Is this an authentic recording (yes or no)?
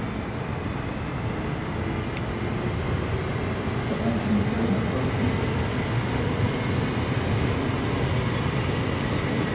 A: yes